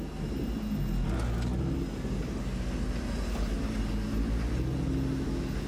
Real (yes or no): yes